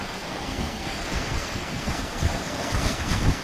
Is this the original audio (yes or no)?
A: no